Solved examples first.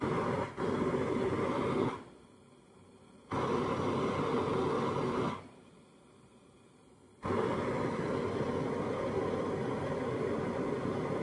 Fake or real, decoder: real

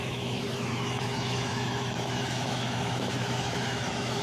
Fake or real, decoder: fake, autoencoder, DAC-VAE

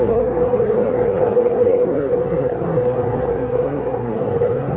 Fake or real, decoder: fake, codec, SNAC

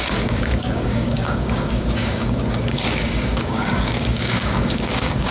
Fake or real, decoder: fake, codec, DAC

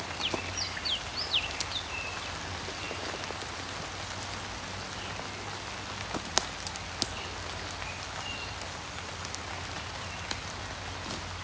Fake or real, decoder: real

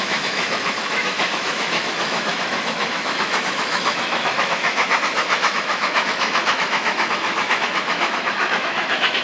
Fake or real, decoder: fake, autoencoder, DAC-VAE